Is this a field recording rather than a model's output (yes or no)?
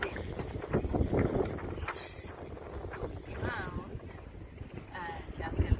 yes